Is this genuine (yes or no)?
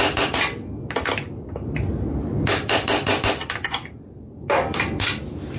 yes